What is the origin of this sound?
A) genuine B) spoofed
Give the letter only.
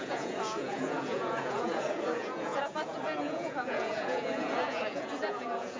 B